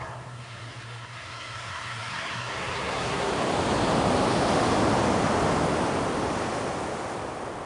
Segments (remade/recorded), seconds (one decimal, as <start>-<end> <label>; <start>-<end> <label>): 0.0-3.3 remade; 3.3-7.7 recorded